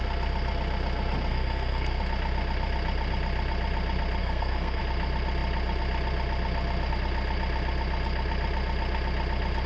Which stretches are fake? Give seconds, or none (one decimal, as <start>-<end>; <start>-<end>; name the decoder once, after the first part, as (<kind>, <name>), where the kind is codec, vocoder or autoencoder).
1.3-2.0 (codec, SNAC); 4.2-4.8